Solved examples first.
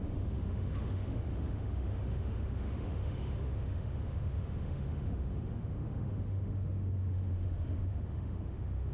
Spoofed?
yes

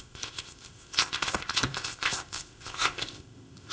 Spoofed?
yes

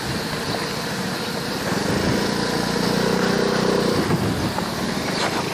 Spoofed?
no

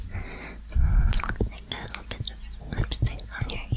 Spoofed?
no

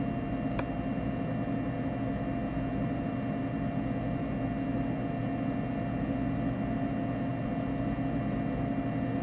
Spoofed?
no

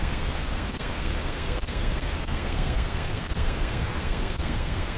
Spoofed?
yes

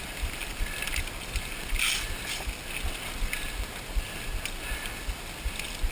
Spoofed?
no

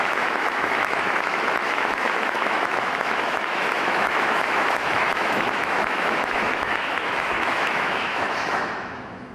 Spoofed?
yes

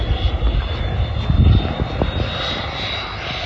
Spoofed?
no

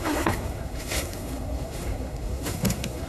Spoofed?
yes